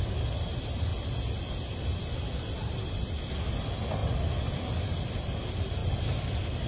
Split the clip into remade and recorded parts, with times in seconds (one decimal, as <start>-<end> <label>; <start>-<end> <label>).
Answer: 0.0-6.7 recorded